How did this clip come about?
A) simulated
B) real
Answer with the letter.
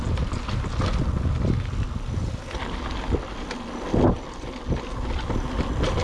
B